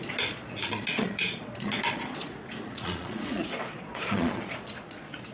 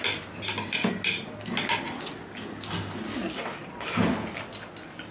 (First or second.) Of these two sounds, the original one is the second